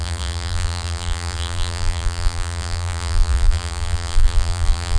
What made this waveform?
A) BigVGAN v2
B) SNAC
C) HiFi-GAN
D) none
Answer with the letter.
A